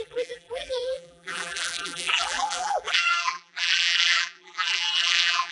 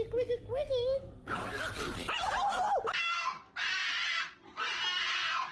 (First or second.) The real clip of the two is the second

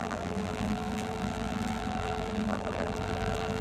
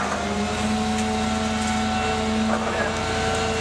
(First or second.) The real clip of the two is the second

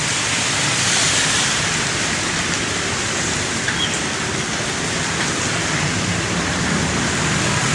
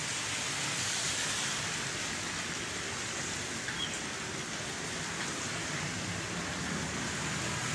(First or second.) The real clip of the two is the second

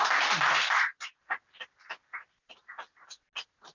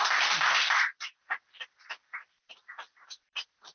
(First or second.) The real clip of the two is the first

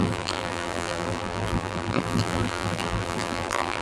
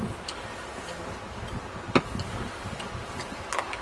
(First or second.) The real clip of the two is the second